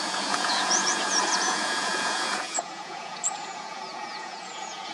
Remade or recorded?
remade